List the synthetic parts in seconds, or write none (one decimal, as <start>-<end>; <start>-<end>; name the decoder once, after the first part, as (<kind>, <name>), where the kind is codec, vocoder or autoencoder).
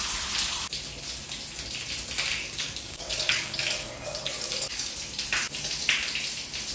2.4-4.9 (codec, DAC)